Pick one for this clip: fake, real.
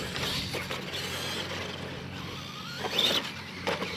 real